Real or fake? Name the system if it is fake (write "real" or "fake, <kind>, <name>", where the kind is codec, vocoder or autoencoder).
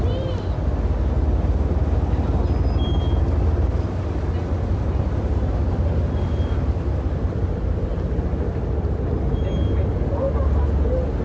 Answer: real